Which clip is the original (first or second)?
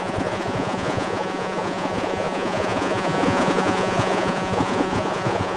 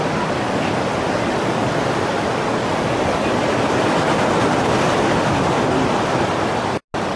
second